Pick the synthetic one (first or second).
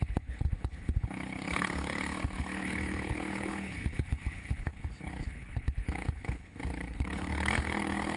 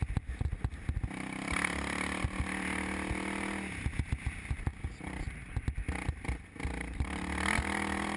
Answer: first